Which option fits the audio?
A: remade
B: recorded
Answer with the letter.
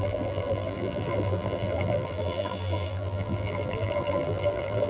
A